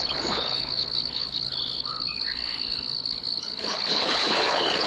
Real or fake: fake